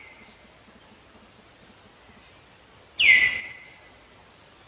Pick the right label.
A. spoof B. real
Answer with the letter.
B